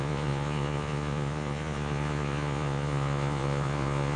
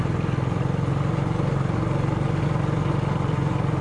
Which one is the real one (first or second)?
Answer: second